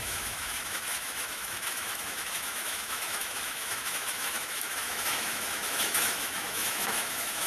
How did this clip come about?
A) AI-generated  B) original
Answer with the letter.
A